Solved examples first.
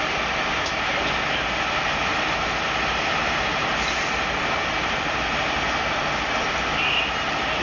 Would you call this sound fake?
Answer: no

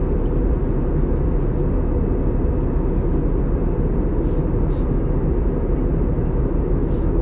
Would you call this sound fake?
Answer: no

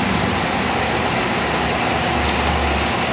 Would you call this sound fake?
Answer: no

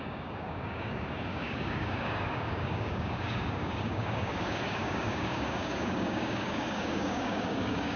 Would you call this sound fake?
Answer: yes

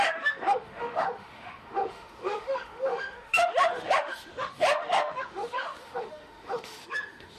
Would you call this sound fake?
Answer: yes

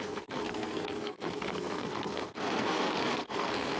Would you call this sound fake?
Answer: yes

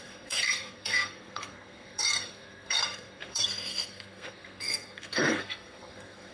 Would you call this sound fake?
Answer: yes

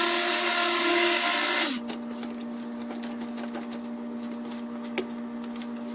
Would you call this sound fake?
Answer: no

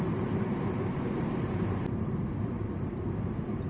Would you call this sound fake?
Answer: yes